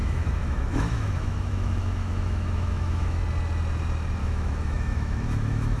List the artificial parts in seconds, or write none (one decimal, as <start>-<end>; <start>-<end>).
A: 0.0-3.2; 4.2-5.8